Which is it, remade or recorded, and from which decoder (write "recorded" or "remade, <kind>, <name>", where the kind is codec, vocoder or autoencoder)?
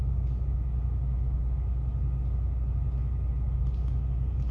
recorded